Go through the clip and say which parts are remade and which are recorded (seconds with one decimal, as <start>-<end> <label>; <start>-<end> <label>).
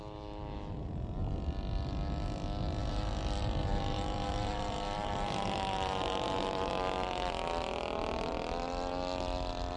0.0-2.8 recorded; 2.8-6.7 remade; 6.7-9.8 recorded